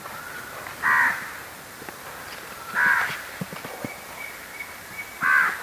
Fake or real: real